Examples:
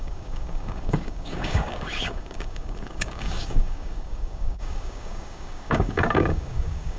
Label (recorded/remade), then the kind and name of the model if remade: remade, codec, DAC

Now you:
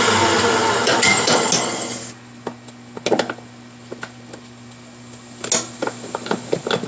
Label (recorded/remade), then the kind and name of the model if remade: recorded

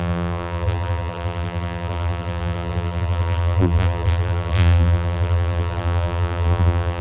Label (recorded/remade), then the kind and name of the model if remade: remade, vocoder, BigVGAN v2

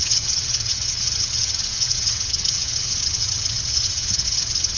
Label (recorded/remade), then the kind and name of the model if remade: remade, vocoder, HiFi-GAN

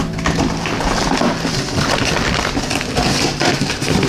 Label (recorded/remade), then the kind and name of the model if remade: recorded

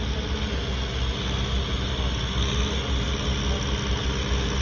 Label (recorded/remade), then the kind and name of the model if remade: recorded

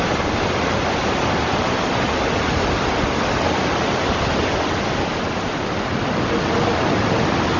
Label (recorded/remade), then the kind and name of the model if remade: recorded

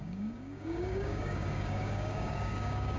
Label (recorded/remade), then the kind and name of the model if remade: remade, codec, DAC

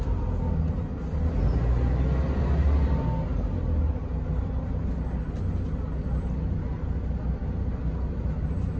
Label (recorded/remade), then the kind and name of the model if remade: recorded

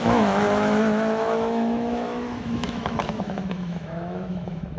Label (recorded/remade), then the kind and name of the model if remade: remade, autoencoder, DAC-VAE